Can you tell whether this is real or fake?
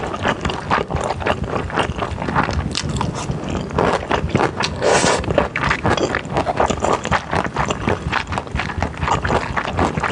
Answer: real